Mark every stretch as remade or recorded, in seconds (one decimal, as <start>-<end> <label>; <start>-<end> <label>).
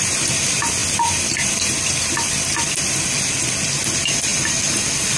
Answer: 0.0-0.8 recorded; 0.8-2.9 remade; 2.9-5.2 recorded